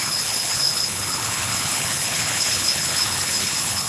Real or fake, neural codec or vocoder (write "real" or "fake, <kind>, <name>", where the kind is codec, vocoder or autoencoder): fake, codec, HILCodec